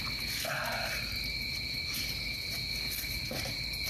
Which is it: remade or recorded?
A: recorded